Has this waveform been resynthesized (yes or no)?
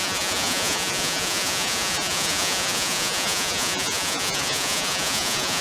yes